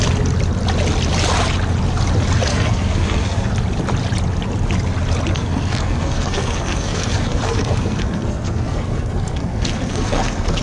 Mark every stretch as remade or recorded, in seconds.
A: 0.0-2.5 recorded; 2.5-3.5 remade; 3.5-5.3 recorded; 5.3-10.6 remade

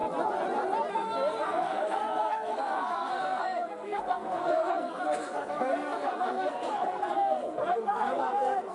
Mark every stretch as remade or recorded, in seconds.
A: 0.0-0.9 recorded; 0.9-8.7 remade

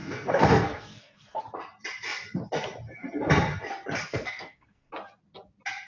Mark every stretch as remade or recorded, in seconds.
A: 0.0-1.4 remade; 1.4-4.1 recorded; 4.1-4.9 remade; 4.9-5.9 recorded

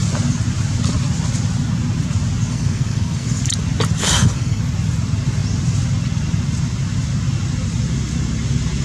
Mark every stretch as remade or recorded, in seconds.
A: 0.0-2.5 recorded; 2.5-3.4 remade; 3.4-4.0 recorded; 4.0-4.6 remade; 4.6-8.8 recorded

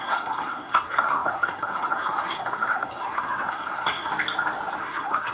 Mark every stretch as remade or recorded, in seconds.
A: 0.0-4.1 remade; 4.1-4.8 recorded; 4.8-5.3 remade

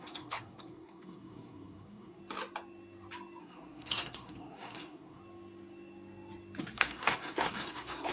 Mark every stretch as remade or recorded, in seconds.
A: 0.0-2.2 remade; 2.2-3.4 recorded; 3.4-5.2 remade; 5.2-6.6 recorded; 6.6-8.1 remade

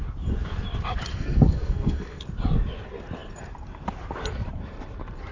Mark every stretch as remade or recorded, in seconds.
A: 0.0-1.1 recorded; 1.1-2.2 remade; 2.2-5.3 recorded

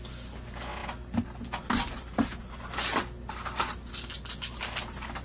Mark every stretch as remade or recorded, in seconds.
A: 0.0-5.2 recorded